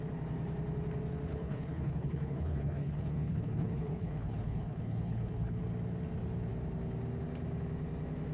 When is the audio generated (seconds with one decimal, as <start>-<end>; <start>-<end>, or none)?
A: 1.3-5.6